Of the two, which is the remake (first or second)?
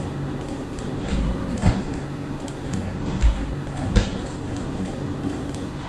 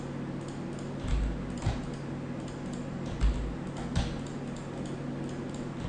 first